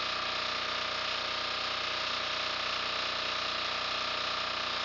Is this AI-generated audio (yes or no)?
no